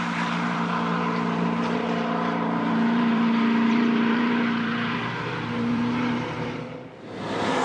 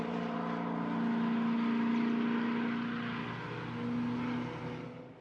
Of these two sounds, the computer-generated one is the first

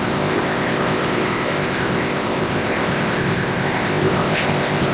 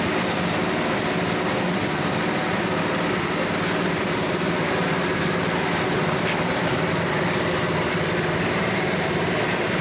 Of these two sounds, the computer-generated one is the first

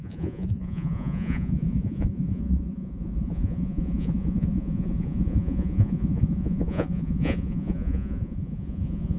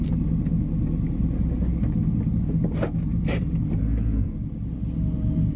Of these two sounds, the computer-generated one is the first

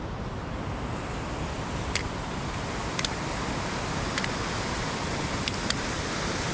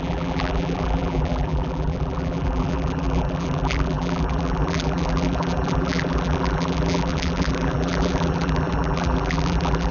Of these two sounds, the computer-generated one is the second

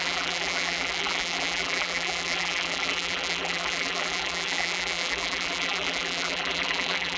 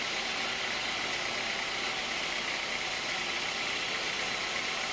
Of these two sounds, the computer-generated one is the first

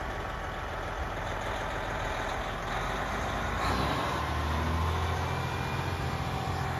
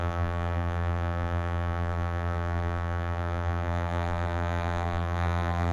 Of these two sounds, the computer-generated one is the second